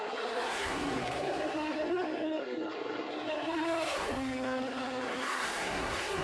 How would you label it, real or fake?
fake